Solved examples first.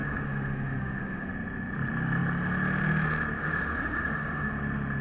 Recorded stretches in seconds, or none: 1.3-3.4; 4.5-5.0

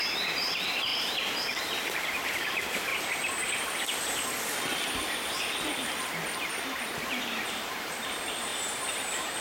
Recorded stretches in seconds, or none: 2.9-6.8

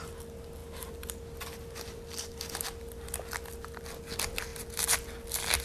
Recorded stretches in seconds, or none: 0.0-5.6